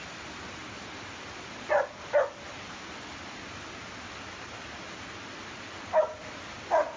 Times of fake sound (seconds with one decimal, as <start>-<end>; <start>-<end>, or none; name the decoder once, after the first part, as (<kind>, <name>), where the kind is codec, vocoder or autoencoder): none